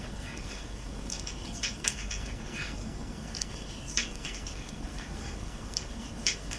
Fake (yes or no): yes